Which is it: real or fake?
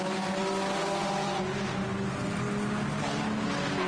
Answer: real